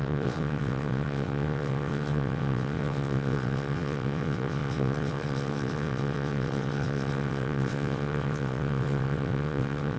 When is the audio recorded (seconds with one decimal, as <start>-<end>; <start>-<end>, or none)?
none